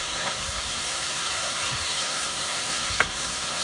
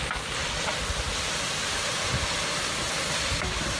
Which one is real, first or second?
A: second